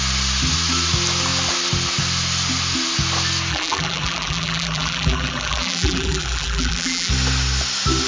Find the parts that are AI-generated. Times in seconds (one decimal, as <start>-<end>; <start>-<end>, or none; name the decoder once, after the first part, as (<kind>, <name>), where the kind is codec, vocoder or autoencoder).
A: 3.5-7.1 (vocoder, BigVGAN v2)